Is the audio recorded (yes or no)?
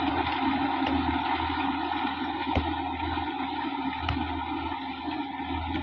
yes